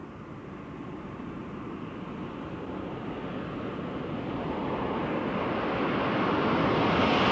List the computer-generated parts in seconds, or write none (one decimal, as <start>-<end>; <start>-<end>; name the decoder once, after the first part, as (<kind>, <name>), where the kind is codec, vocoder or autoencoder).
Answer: none